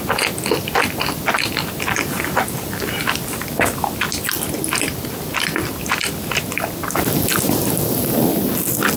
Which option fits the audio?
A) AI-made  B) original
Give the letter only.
B